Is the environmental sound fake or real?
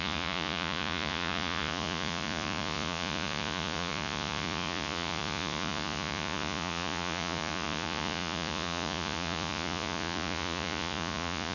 fake